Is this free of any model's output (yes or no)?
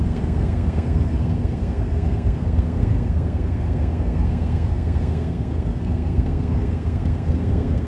no